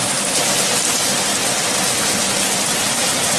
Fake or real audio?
real